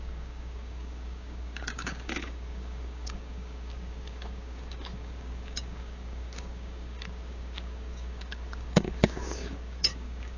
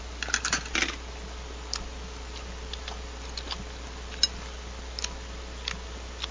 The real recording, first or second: second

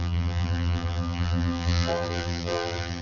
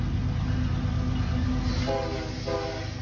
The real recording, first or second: second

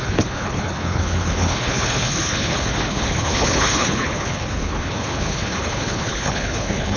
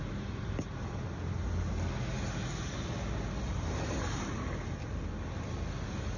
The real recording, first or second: second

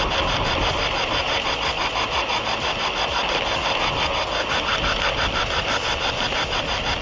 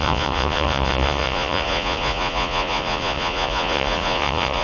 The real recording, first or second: first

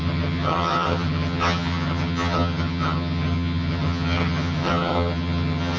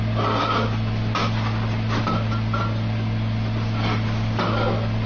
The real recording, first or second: second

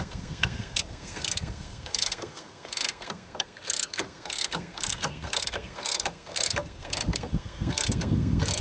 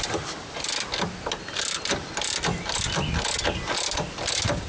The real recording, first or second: second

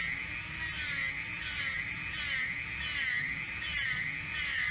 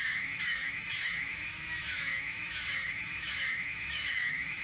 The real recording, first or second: first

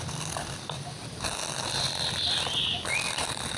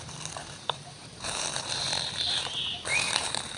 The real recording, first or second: first